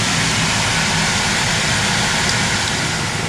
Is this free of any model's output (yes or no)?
yes